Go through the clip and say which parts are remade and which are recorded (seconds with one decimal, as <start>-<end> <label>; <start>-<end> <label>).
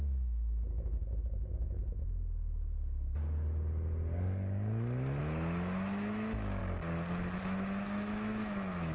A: 0.0-1.0 remade; 1.0-5.2 recorded; 5.2-6.6 remade; 6.6-7.4 recorded; 7.4-8.9 remade